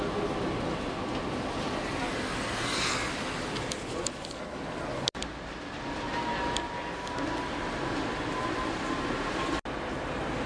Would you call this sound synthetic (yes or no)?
no